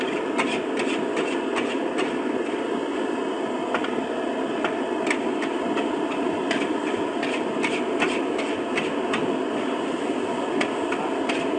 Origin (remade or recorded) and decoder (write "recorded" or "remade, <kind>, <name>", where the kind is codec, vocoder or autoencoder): recorded